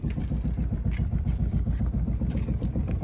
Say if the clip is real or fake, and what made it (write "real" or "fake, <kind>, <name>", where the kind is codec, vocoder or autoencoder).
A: fake, vocoder, BigVGAN v2